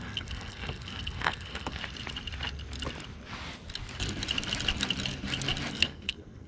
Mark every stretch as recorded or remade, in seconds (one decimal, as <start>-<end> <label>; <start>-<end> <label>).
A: 0.0-1.8 remade; 1.8-5.7 recorded; 5.7-6.5 remade